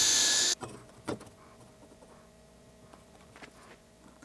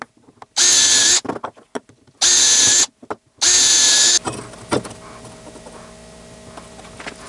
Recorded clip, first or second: second